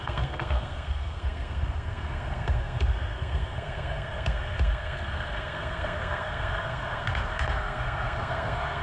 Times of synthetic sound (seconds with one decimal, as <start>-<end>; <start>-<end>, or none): 0.0-8.8